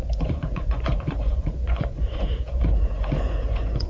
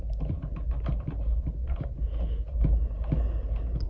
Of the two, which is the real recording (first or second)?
second